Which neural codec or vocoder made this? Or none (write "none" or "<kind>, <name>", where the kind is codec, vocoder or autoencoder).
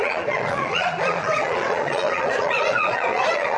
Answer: vocoder, Vocos